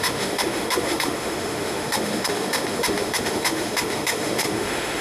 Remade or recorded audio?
remade